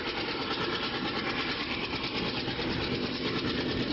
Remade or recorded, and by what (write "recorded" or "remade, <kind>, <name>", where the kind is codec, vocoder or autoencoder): recorded